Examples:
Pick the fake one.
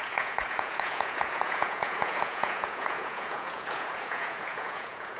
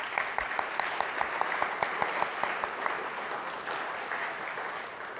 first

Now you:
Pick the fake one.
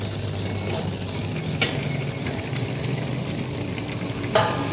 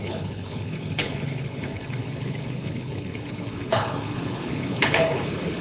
second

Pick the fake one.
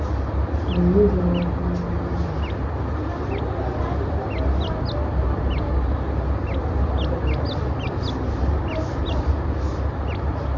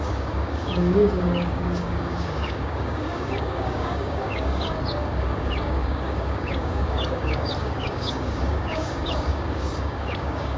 second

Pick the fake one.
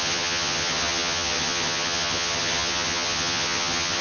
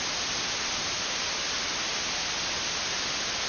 first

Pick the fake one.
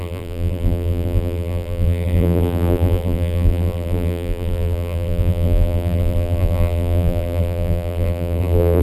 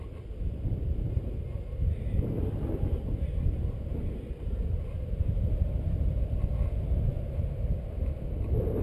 first